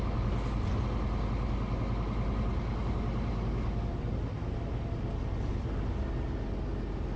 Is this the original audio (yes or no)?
yes